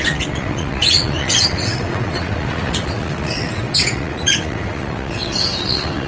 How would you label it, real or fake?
fake